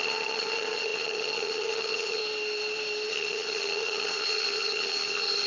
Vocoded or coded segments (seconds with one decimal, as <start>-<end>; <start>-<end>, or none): 0.0-2.2; 3.1-5.5